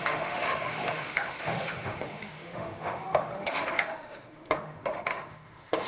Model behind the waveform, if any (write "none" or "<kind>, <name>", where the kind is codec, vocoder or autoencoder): autoencoder, DAC-VAE